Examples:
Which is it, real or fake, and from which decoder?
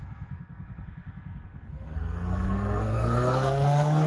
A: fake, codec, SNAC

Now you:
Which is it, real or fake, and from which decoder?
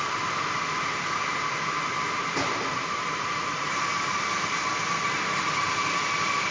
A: real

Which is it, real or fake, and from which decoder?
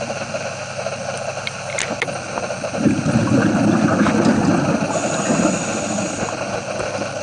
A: real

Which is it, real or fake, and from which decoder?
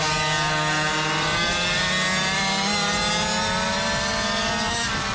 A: real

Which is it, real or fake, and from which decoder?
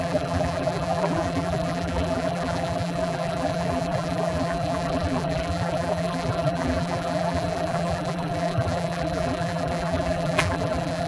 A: fake, vocoder, BigVGAN v2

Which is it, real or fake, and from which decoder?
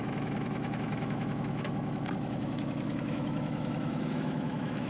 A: fake, autoencoder, DAC-VAE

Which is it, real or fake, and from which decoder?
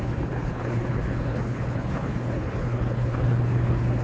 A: fake, codec, HILCodec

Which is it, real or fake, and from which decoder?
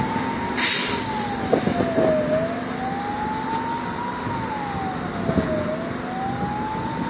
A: real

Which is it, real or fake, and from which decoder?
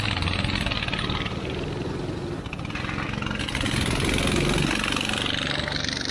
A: real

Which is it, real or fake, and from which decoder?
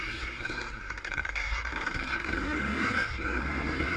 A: fake, codec, SNAC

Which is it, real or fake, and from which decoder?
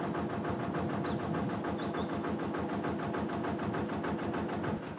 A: real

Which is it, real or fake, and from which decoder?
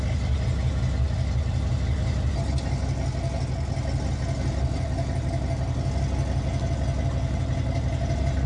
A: real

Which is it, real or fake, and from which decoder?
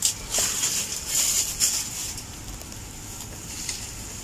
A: real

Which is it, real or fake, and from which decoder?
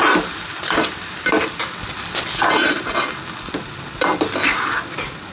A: real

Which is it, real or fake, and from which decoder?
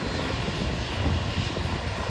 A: real